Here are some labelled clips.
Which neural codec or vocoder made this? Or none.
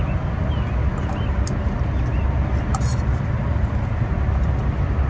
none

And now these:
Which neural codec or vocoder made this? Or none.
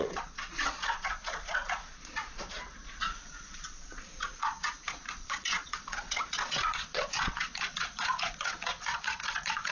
vocoder, Vocos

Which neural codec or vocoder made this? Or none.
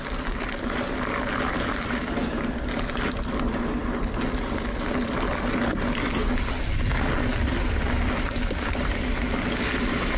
none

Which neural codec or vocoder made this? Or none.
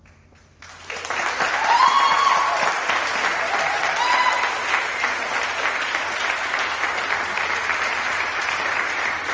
none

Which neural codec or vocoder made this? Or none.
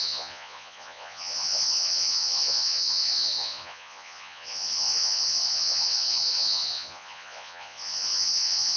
vocoder, Vocos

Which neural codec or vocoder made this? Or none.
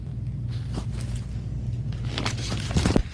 none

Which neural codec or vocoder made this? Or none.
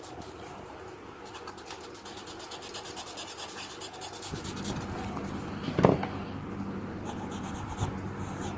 none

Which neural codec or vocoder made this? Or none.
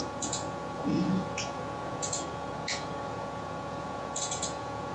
vocoder, Vocos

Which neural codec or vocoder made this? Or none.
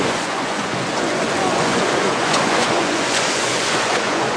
vocoder, Vocos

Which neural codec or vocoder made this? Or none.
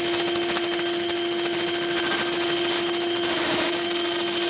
none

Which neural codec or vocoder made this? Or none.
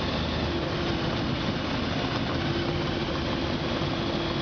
none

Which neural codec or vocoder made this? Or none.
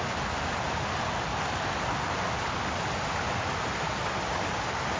none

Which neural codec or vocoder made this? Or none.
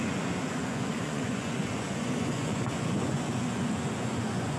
vocoder, Vocos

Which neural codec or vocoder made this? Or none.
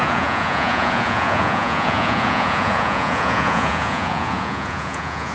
vocoder, Vocos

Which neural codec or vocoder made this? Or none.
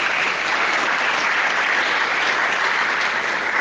none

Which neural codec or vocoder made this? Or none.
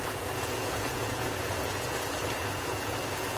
vocoder, Vocos